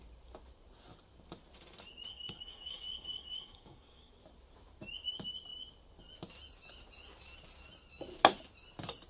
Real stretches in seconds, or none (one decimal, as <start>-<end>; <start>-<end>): 0.0-2.1; 4.1-9.1